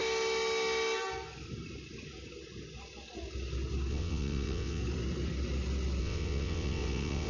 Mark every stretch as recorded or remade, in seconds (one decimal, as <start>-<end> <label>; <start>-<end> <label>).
0.0-3.9 recorded; 3.9-4.8 remade; 4.8-6.0 recorded; 6.0-7.3 remade